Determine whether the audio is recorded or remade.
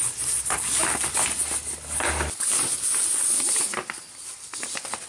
recorded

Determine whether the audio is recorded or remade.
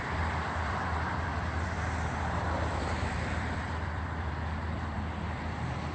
remade